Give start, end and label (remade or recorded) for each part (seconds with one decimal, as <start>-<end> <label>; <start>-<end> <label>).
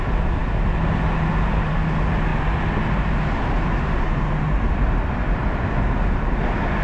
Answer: 0.0-6.8 recorded